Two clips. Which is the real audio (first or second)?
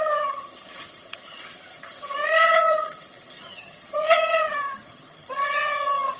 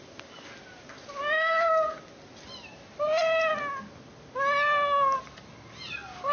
second